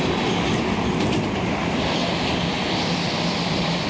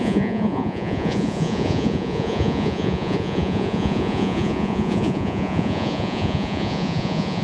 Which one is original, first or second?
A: first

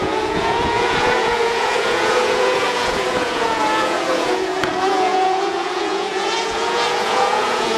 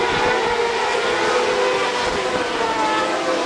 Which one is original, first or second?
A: second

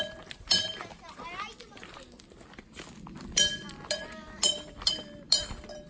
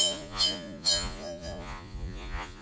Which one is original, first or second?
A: first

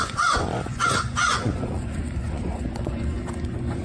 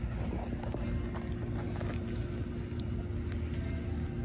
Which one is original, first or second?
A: second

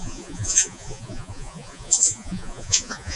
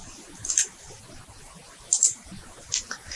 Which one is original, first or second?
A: second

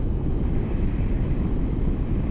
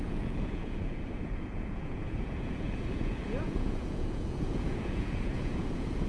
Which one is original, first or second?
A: first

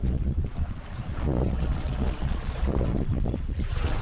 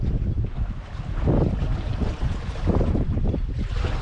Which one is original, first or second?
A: second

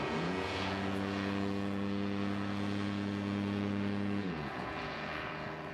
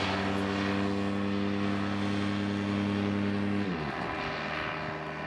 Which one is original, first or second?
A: second